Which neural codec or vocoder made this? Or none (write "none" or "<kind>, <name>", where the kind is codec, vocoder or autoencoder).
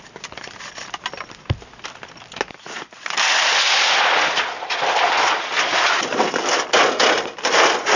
none